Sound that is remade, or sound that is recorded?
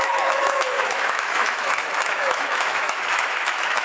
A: remade